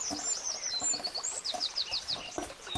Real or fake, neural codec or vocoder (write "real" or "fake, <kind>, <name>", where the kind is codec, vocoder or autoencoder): real